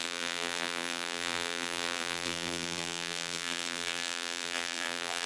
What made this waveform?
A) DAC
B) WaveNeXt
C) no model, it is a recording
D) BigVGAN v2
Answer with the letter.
D